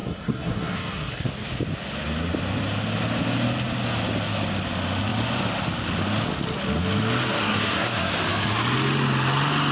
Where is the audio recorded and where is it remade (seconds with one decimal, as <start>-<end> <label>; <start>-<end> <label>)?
0.0-1.3 remade; 1.3-7.4 recorded; 7.4-8.1 remade; 8.1-9.7 recorded